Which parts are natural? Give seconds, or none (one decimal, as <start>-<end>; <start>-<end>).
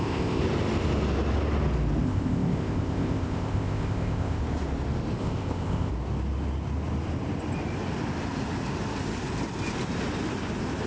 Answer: 0.4-2.0; 4.4-5.2; 5.9-10.9